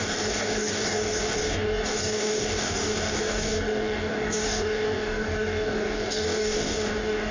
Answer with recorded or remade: remade